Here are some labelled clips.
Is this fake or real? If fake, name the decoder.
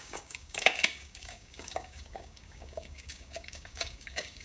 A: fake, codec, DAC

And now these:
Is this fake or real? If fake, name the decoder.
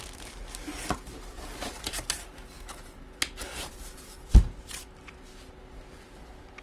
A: real